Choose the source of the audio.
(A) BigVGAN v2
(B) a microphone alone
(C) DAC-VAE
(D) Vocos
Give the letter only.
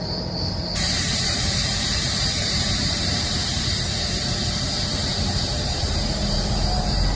A